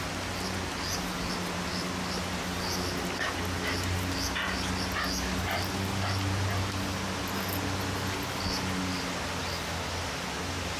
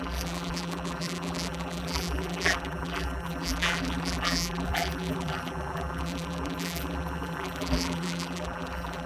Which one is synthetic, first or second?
second